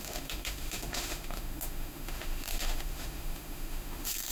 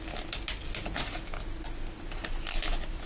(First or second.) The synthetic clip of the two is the first